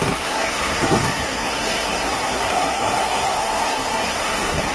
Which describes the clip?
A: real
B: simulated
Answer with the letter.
B